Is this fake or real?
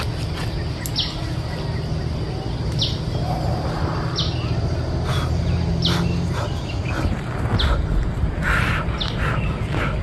real